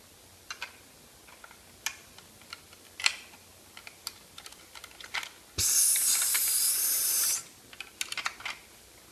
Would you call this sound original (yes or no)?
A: yes